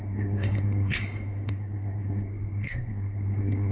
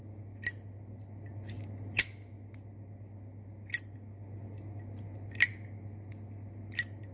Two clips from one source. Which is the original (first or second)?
second